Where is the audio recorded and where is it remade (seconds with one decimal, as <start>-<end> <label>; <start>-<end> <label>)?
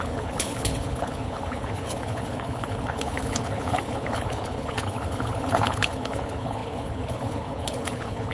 0.0-8.3 remade